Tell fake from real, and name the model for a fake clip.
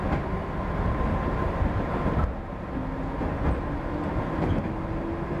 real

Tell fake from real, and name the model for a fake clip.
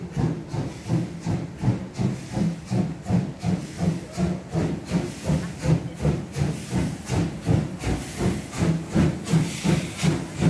real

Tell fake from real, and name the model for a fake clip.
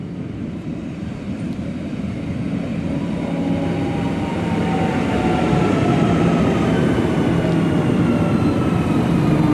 real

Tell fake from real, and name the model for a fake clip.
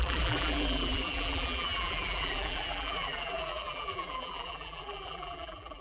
fake, vocoder, BigVGAN v2